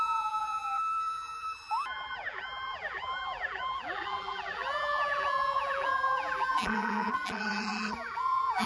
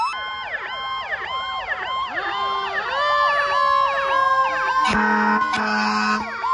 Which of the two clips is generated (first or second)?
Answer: first